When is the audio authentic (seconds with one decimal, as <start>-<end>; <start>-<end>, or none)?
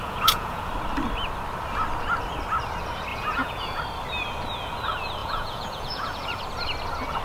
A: 0.7-3.1; 3.8-5.2; 6.4-7.2